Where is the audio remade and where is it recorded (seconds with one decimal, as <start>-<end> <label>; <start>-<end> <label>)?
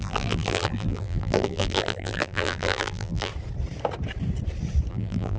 0.0-3.3 remade; 3.3-4.9 recorded; 4.9-5.4 remade